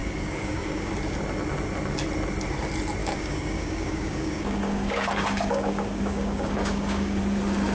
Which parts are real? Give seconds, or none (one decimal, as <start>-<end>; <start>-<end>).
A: 0.9-3.0; 7.2-7.7